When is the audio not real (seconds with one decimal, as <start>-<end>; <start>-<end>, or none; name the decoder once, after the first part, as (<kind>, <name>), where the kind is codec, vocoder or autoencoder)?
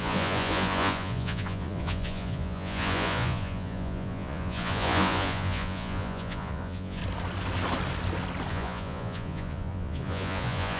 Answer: 0.0-7.0 (vocoder, Vocos); 8.5-10.8